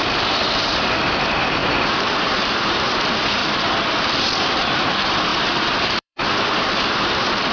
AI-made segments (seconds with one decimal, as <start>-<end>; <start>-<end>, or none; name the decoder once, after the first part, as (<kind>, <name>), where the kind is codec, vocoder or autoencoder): 0.0-3.4 (vocoder, BigVGAN v2); 3.9-7.5